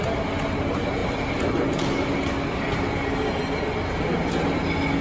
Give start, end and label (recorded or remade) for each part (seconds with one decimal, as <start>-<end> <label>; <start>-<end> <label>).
0.0-5.0 recorded